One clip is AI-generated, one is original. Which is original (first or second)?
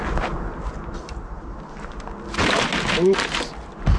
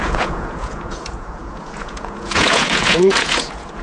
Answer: first